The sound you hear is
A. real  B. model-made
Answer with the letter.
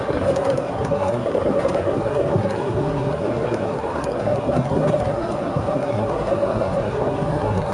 B